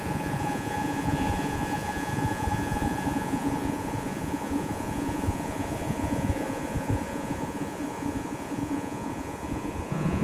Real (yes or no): no